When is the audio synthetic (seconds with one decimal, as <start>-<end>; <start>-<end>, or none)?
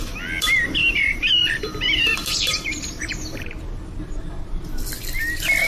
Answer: 0.8-3.6